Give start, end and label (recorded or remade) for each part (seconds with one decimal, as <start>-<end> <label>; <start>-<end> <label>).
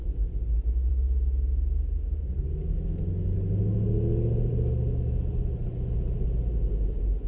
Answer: 0.0-7.3 recorded